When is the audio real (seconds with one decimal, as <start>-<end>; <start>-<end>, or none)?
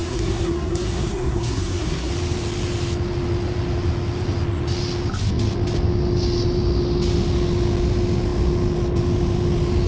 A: 2.1-9.9